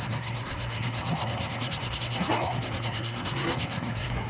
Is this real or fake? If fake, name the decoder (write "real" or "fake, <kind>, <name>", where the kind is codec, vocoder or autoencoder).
fake, codec, SNAC